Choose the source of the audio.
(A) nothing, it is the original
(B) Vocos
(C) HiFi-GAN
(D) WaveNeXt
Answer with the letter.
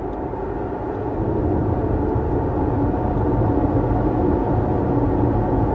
A